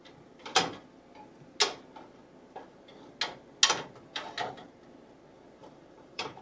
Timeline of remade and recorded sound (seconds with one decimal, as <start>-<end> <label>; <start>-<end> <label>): 0.0-5.6 recorded; 5.6-6.4 remade